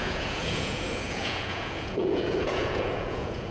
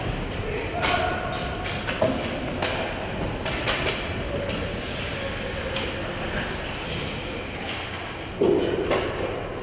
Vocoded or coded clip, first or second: first